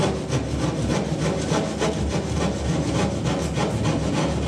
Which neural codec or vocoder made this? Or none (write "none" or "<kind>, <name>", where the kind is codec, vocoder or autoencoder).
none